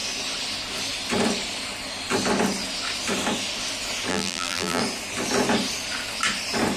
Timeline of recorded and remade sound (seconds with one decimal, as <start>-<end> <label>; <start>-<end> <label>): 0.0-4.1 recorded; 4.1-4.8 remade; 4.8-6.8 recorded